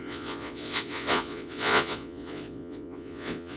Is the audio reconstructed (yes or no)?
yes